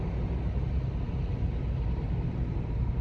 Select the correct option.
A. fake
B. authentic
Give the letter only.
B